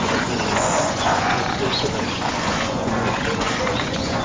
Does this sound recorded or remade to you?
remade